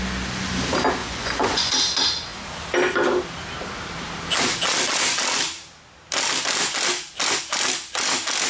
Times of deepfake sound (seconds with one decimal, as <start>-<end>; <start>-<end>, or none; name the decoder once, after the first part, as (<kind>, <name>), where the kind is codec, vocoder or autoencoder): 1.0-1.7 (vocoder, Vocos)